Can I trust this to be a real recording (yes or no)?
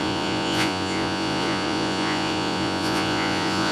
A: no